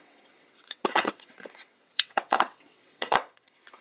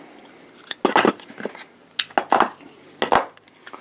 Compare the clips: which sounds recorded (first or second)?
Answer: second